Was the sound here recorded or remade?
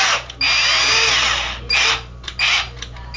recorded